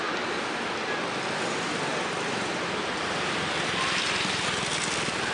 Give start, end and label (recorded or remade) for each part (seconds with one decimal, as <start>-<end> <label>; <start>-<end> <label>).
0.0-5.3 recorded